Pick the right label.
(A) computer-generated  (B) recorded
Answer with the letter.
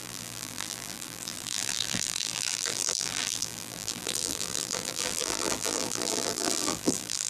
A